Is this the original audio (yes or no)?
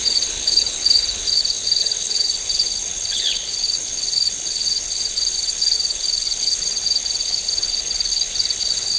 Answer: no